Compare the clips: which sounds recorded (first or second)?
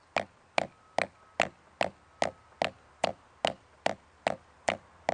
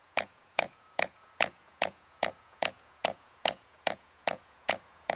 first